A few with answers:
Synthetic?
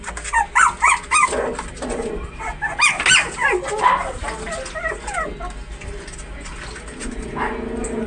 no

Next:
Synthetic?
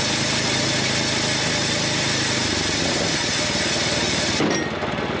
no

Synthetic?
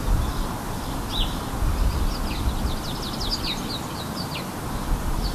no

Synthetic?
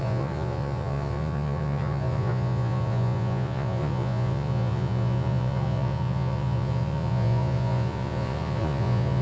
yes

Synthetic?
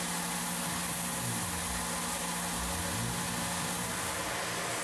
no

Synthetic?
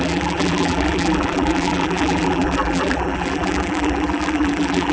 yes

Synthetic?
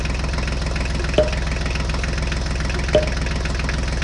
no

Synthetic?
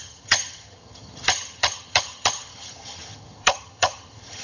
yes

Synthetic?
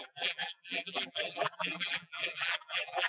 yes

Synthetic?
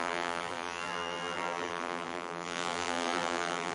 yes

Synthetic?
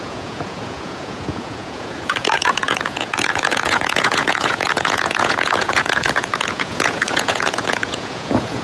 yes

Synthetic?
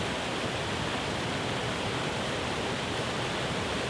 no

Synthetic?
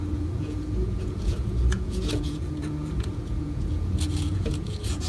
yes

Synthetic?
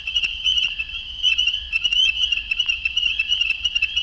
yes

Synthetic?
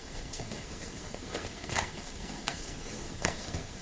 yes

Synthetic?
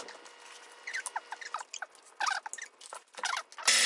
no